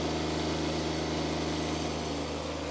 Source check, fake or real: real